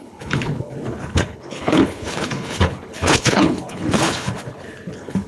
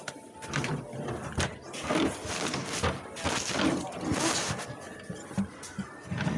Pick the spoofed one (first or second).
first